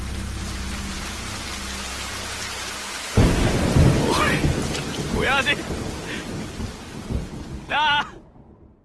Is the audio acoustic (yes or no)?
yes